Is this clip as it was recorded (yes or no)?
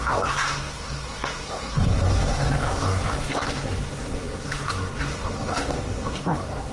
no